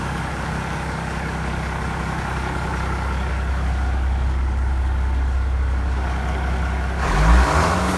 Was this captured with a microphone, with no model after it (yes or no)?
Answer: no